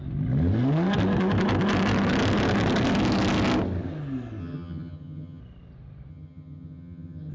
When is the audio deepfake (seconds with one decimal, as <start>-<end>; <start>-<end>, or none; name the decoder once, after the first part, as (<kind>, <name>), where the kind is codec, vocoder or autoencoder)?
4.4-5.4 (vocoder, HiFi-GAN); 6.1-7.3